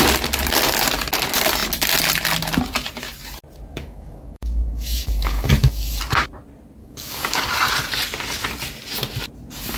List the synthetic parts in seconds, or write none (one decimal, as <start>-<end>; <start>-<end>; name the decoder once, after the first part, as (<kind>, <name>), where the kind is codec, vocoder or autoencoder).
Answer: 3.7-6.0 (codec, DAC); 6.8-7.5